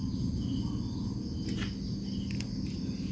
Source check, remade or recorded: recorded